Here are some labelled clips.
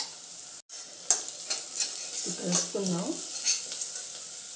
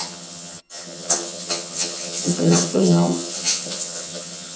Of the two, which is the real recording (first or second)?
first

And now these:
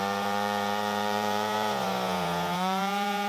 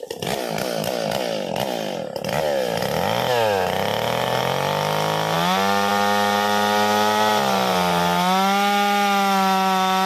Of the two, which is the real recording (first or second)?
second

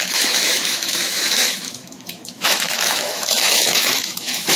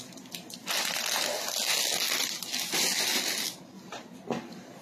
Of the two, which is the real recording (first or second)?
second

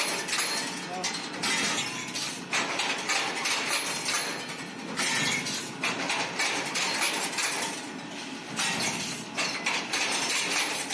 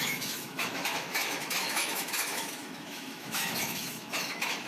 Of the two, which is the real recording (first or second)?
first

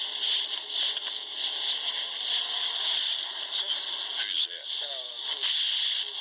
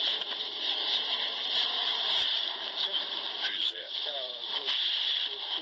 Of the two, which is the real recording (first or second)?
first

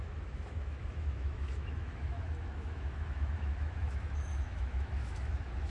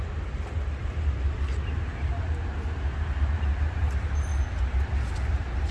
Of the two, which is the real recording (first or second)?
second